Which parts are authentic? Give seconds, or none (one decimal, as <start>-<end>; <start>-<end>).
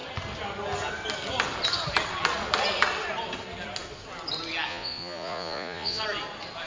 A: 0.0-4.7; 6.0-6.7